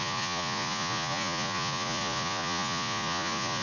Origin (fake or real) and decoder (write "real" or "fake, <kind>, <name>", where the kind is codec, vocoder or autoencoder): fake, vocoder, Vocos